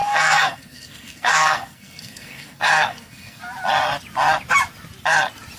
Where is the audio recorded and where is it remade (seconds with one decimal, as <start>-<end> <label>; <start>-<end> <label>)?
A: 0.0-3.4 remade; 3.4-5.6 recorded